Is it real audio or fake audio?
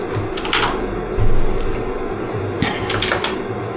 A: real